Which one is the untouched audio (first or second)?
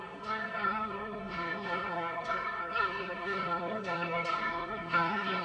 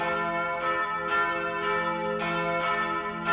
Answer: second